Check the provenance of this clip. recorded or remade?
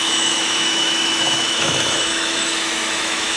remade